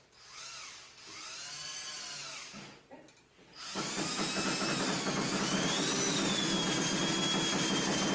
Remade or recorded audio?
recorded